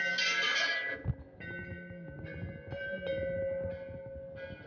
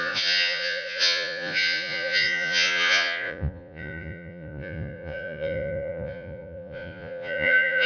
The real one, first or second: first